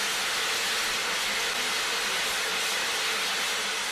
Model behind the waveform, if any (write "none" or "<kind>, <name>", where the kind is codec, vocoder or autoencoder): none